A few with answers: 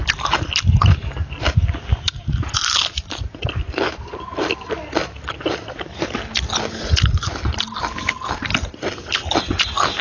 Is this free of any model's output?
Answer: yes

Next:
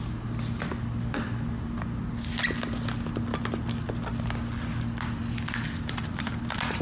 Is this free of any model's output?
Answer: yes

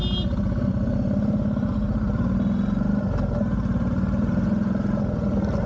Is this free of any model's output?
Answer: yes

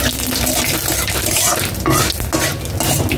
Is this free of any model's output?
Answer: yes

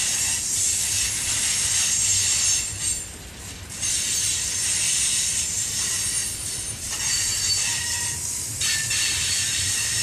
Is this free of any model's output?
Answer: yes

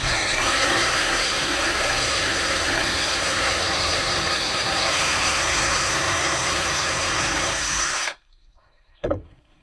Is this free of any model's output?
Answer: no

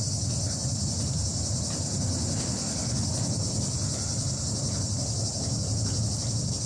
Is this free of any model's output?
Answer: yes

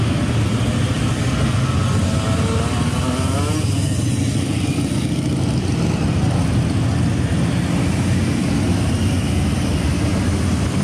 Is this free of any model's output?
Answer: yes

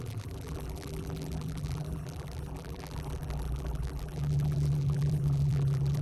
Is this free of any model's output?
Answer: no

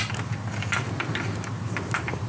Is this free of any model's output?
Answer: yes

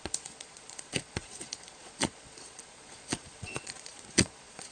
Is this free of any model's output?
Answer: no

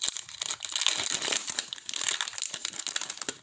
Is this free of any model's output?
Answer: yes